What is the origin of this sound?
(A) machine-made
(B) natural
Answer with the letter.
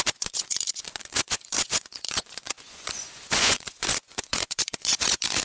A